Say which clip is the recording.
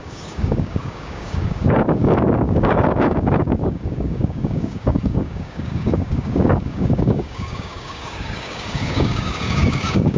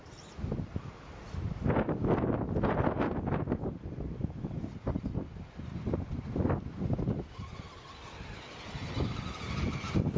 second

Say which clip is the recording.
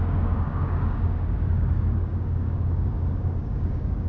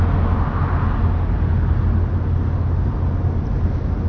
second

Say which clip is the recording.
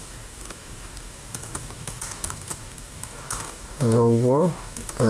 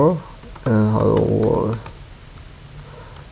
second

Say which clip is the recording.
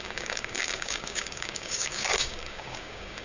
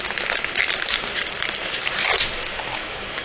second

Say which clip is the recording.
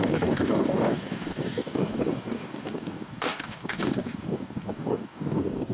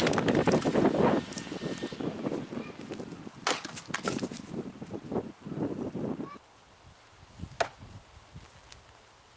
second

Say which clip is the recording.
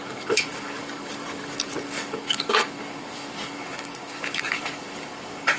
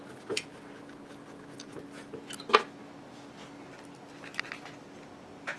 second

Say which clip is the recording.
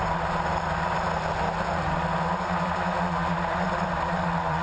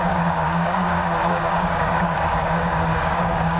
first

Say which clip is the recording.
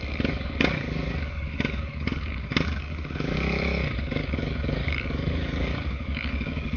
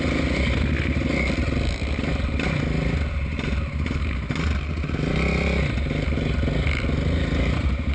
second